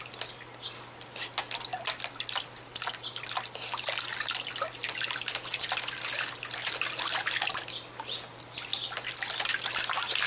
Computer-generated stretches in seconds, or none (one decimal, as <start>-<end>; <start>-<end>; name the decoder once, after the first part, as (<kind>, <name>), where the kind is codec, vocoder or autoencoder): none